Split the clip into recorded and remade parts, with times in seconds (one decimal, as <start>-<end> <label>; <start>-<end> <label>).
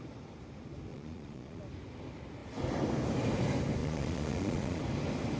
0.0-0.9 recorded; 0.9-1.6 remade; 1.6-3.8 recorded; 3.8-4.8 remade; 4.8-5.4 recorded